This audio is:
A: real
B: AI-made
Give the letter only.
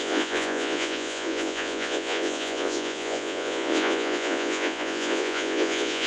B